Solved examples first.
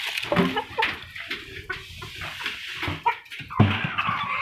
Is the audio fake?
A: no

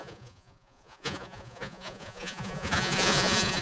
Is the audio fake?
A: yes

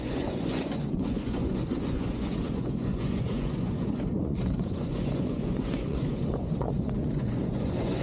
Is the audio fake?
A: yes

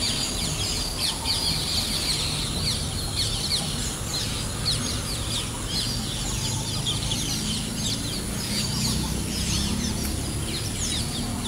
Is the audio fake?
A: no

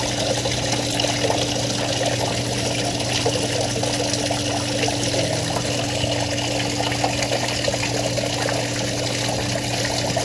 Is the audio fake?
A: no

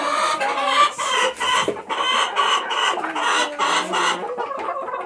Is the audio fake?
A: no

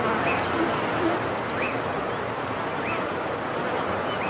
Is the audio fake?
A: no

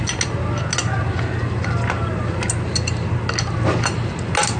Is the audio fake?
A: no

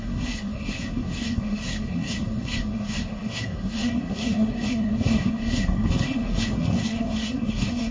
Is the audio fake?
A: yes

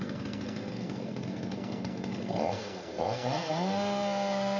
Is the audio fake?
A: yes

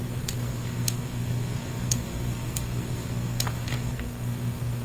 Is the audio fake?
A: yes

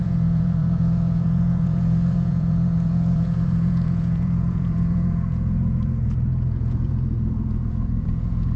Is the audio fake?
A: yes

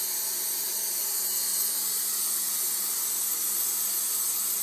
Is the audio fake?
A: no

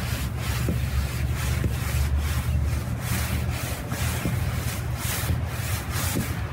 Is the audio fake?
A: no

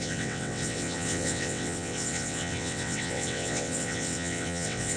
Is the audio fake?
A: yes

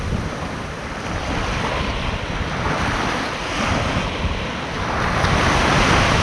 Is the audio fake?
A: no